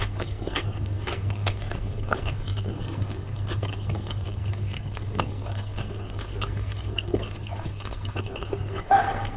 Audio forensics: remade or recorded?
remade